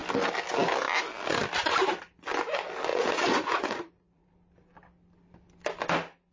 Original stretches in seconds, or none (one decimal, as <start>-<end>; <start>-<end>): 0.0-2.9; 4.3-6.3